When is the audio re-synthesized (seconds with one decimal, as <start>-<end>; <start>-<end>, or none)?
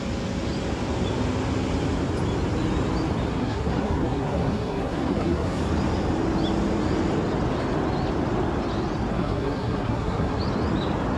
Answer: 3.3-5.6; 9.1-10.4